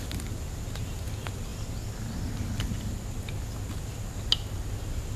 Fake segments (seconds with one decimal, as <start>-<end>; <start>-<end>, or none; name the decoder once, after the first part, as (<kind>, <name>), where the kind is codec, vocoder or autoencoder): none